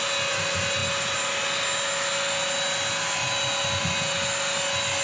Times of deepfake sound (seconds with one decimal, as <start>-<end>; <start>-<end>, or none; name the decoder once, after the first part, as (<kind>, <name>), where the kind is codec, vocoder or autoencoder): none